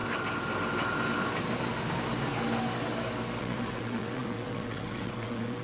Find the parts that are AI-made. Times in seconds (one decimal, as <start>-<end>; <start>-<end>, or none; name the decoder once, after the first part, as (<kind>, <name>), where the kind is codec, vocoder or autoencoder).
3.4-5.6 (vocoder, WaveNeXt)